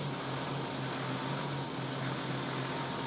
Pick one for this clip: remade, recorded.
recorded